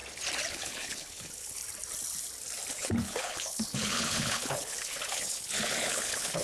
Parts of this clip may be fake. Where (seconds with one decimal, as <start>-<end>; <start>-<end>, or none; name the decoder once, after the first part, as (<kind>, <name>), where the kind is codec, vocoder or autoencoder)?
0.5-1.6 (codec, HILCodec); 2.7-6.4